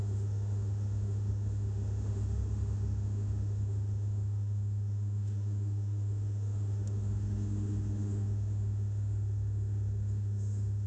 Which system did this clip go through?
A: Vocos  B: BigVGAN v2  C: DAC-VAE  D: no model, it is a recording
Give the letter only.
C